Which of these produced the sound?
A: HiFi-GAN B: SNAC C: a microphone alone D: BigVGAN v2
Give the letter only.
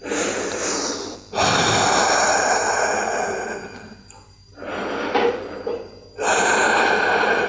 C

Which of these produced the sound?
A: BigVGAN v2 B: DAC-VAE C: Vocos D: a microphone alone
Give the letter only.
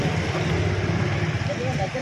D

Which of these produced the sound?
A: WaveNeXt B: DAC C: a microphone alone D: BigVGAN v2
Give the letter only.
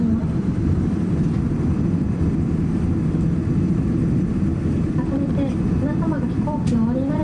D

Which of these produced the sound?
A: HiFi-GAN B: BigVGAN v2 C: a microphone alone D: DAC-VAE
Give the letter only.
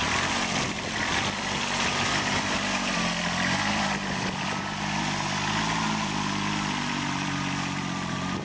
B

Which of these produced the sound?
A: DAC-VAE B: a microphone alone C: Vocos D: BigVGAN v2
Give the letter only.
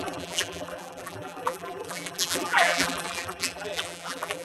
D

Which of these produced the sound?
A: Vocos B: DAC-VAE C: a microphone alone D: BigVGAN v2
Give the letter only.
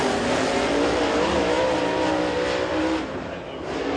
C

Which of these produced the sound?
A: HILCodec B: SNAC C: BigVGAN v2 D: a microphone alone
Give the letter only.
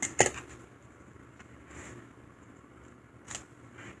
D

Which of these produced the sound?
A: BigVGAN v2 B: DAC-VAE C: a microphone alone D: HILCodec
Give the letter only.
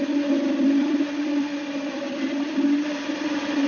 A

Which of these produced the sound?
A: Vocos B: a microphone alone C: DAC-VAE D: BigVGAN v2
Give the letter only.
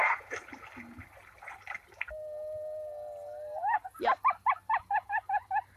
B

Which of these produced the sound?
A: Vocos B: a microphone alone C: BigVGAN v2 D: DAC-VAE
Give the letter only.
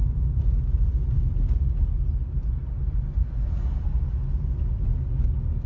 B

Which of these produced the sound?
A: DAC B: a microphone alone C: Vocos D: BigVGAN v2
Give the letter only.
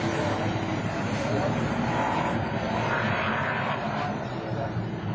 D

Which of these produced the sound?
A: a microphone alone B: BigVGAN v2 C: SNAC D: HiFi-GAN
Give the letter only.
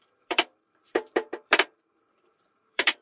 B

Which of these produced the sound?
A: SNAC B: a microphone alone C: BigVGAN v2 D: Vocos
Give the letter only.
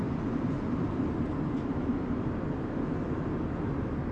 B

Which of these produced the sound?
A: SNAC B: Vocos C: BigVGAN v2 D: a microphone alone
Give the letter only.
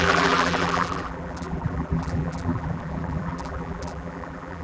C